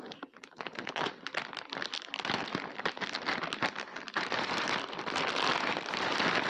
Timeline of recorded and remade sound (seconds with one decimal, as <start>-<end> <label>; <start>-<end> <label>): 0.0-3.9 recorded; 3.9-4.7 remade; 4.7-6.5 recorded